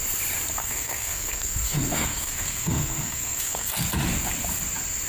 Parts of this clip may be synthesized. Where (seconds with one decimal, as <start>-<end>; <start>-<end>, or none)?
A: 0.6-3.7